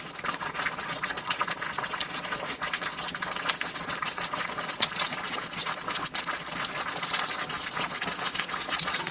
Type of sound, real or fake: fake